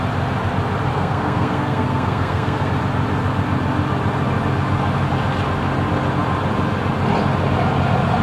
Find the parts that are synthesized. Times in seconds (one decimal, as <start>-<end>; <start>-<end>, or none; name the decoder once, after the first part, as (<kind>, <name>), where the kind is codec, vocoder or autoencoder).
0.9-2.7 (codec, SNAC)